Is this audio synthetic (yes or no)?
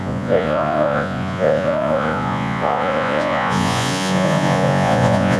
yes